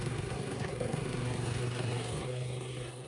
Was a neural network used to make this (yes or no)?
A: yes